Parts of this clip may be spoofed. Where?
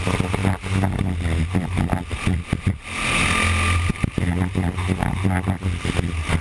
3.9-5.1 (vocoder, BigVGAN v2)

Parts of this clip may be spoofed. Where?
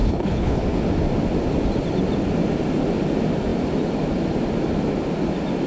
0.0-0.6 (codec, HILCodec)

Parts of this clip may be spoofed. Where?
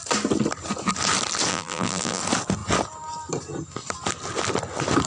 1.5-2.2 (vocoder, BigVGAN v2)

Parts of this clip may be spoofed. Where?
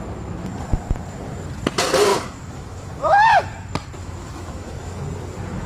2.1-3.4 (autoencoder, DAC-VAE); 4.0-5.0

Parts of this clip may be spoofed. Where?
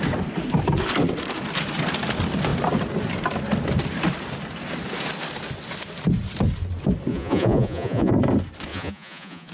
7.1-8.1 (vocoder, Vocos); 8.7-9.5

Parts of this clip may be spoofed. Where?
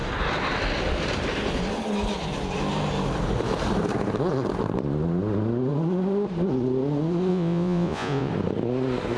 7.3-8.3 (vocoder, Vocos)